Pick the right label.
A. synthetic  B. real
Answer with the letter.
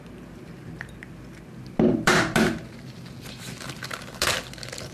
B